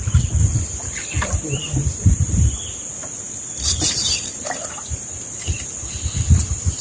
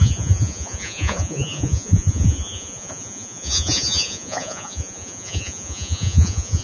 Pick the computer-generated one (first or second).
second